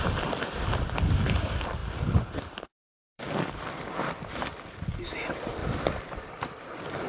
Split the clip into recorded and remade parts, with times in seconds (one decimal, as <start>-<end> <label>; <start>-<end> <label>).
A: 0.0-7.1 remade